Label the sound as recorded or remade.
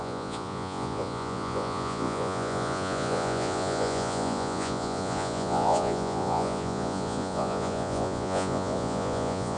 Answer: remade